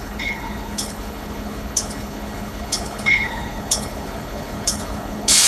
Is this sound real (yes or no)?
no